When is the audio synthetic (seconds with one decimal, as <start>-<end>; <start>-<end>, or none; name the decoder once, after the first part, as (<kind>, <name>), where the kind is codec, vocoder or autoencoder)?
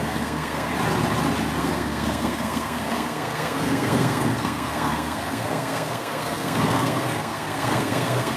0.0-0.7 (codec, SNAC); 1.6-8.4